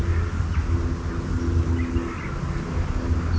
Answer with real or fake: real